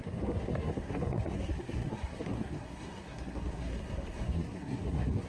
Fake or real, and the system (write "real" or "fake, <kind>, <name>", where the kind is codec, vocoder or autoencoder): fake, codec, SNAC